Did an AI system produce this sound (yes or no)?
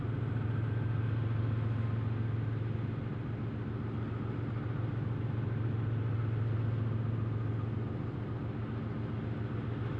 no